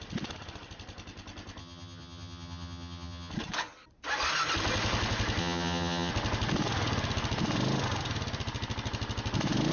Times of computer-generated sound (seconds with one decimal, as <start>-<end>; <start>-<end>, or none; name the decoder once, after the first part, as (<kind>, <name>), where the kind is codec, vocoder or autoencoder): 1.6-3.3 (vocoder, HiFi-GAN); 5.4-6.1